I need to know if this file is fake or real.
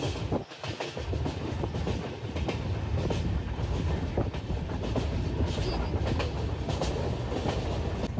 real